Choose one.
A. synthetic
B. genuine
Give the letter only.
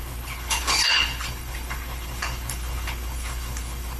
A